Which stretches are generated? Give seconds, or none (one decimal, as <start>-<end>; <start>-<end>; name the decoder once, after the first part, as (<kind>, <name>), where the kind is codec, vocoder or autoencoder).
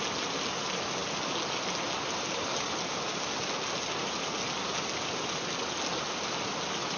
none